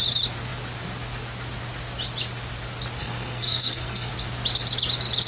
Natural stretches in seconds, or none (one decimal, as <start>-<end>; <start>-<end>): 0.0-3.0; 4.1-5.3